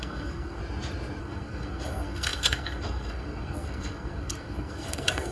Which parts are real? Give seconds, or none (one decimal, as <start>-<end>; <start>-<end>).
0.6-1.2